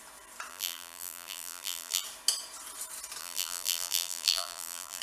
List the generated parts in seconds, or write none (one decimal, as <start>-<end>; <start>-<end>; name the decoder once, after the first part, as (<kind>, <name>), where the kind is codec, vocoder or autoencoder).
0.5-2.0 (vocoder, BigVGAN v2); 3.2-5.0